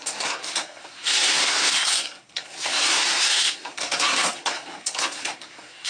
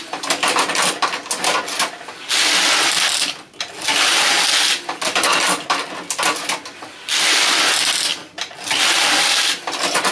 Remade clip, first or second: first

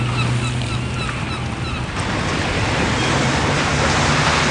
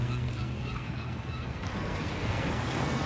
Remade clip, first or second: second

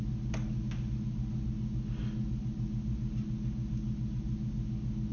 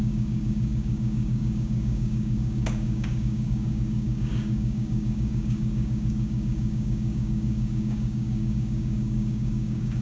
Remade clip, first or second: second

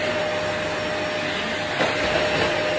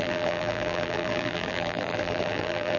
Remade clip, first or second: second